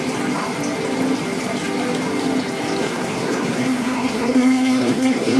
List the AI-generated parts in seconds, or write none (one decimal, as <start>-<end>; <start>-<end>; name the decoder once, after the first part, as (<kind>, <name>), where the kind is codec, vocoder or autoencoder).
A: 2.8-5.4 (codec, SNAC)